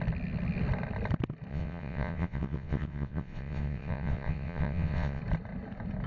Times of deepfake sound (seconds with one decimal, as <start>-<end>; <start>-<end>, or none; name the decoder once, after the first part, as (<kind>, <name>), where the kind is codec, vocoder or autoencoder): 1.5-5.2 (vocoder, WaveNeXt)